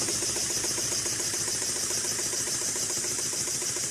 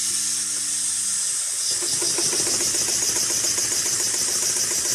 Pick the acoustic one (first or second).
second